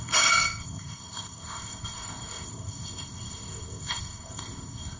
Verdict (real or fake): fake